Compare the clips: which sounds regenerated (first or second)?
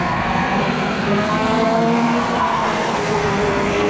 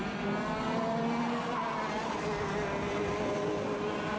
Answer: first